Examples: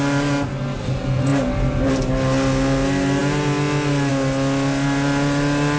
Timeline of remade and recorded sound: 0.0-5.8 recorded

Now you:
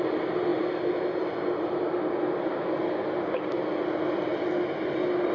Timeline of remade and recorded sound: 0.0-5.3 recorded

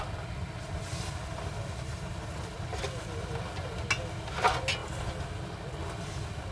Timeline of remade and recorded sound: 0.0-6.5 recorded

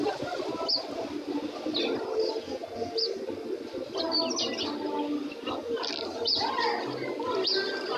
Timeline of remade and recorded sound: 0.0-8.0 recorded

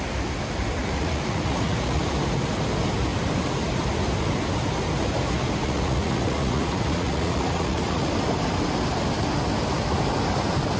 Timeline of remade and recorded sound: 0.0-0.8 recorded; 0.8-2.0 remade; 2.0-5.6 recorded; 5.6-8.1 remade; 8.1-10.8 recorded

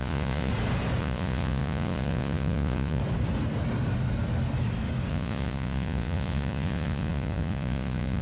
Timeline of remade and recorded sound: 0.0-0.5 remade; 0.5-1.0 recorded; 1.0-3.0 remade; 3.0-5.1 recorded; 5.1-8.2 remade

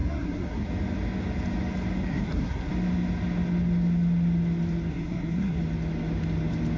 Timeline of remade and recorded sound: 0.0-0.7 remade; 0.7-2.0 recorded; 2.0-2.7 remade; 2.7-4.9 recorded; 4.9-5.6 remade; 5.6-6.8 recorded

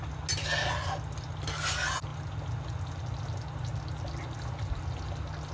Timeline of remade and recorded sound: 0.0-5.5 recorded